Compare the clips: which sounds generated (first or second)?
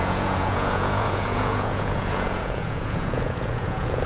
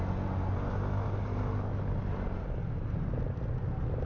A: first